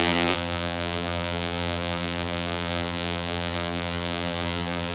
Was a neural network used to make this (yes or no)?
yes